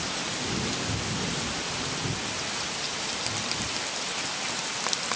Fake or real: real